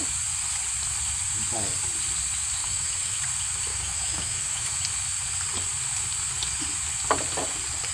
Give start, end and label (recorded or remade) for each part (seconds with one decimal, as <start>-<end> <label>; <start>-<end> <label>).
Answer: 0.0-2.6 recorded; 2.6-3.2 remade; 3.2-3.7 recorded; 3.7-4.8 remade; 4.8-7.9 recorded